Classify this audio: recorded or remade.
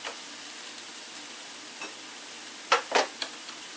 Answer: recorded